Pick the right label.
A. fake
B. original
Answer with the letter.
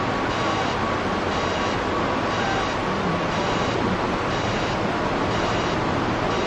B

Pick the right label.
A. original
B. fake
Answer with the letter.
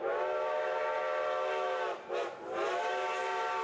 A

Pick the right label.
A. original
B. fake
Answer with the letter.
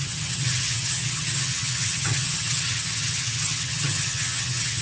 B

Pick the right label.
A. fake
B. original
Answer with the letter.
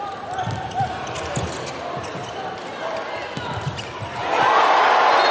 B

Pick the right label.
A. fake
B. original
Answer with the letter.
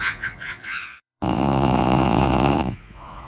A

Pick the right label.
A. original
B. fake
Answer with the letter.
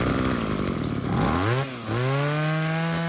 A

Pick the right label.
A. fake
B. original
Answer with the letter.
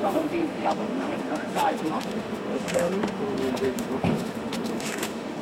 A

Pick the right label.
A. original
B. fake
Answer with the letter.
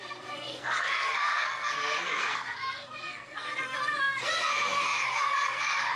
B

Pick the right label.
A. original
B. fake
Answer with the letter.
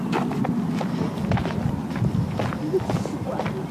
A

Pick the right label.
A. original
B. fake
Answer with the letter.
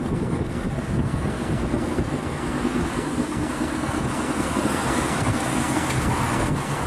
B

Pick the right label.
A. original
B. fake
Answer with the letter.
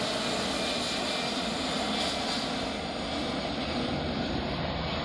A